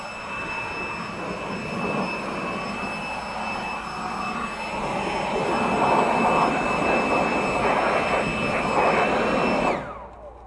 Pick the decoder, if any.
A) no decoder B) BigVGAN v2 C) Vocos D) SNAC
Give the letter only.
A